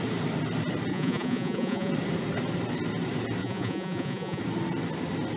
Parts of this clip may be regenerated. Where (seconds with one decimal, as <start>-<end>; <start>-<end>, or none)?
0.9-1.9; 3.4-4.4